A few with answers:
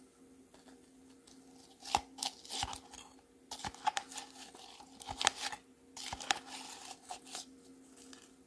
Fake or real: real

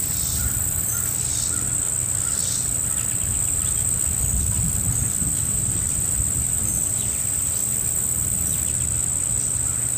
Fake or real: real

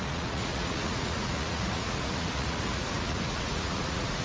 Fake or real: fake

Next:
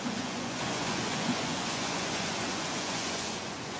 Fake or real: fake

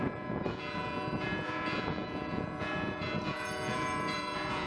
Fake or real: fake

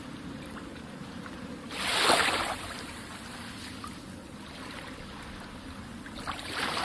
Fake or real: real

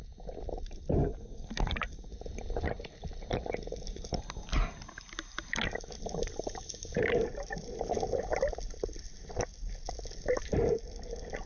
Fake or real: real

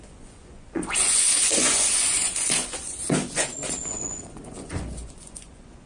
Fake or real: fake